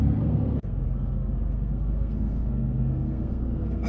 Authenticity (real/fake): fake